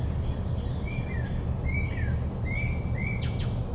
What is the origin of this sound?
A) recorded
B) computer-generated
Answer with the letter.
A